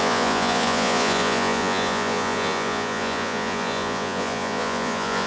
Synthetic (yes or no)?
yes